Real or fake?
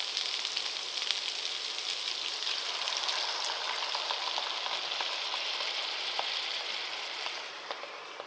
real